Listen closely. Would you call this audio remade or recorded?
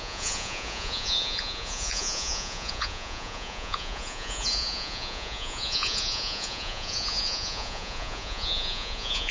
remade